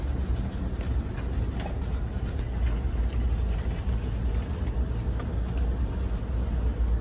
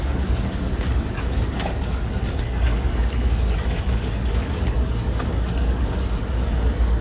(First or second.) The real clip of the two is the first